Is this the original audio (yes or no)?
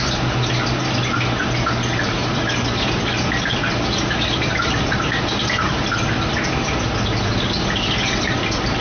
yes